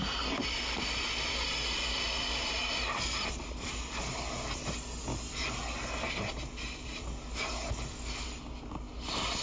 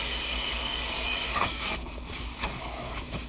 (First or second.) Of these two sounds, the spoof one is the second